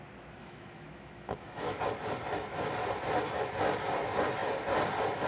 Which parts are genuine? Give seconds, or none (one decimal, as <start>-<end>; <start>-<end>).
0.0-0.4; 1.8-5.3